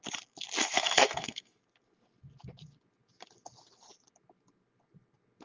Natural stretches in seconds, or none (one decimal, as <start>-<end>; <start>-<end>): 0.0-0.6; 1.6-5.4